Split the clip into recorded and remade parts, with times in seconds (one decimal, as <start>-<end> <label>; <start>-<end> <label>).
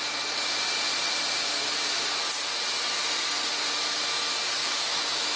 0.0-4.6 recorded; 4.6-5.4 remade